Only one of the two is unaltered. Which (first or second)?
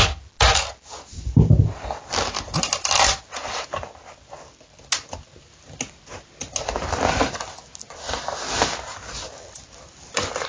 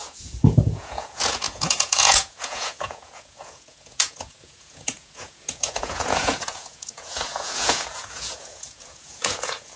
first